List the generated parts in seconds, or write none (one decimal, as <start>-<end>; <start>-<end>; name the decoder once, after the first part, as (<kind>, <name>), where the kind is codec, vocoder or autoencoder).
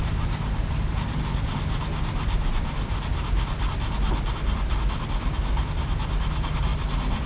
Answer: none